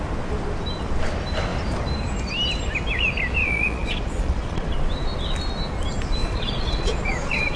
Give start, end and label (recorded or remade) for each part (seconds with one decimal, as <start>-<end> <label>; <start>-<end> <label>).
0.0-3.4 recorded; 3.4-4.7 remade; 4.7-6.2 recorded; 6.2-7.6 remade